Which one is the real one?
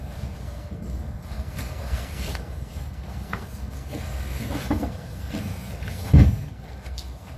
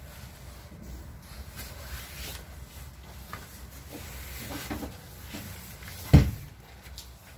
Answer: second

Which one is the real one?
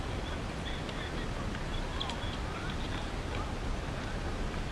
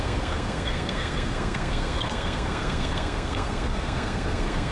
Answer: first